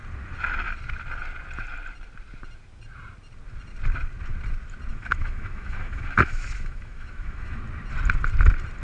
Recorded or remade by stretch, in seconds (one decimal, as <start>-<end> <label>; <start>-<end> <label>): 0.0-4.9 recorded; 4.9-7.6 remade; 7.6-8.8 recorded